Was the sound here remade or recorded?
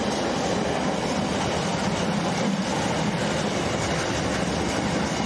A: recorded